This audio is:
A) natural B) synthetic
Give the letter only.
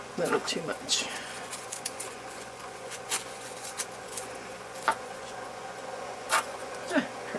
B